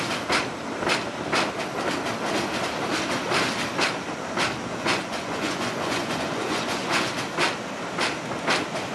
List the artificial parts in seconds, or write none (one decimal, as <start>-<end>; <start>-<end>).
4.7-7.1